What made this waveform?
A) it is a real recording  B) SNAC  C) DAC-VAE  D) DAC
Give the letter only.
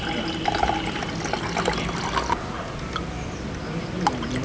A